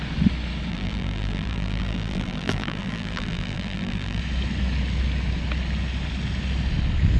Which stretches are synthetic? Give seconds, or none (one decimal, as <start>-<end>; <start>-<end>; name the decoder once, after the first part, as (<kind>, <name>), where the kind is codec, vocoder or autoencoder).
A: 0.7-4.2 (vocoder, BigVGAN v2)